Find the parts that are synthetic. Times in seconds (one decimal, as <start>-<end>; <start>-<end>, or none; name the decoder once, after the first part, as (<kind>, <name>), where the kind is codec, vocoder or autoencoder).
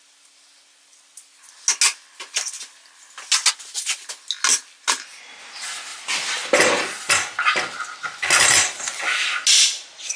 none